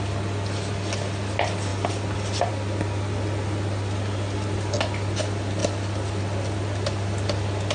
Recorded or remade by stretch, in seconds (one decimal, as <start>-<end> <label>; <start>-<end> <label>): 0.0-7.7 recorded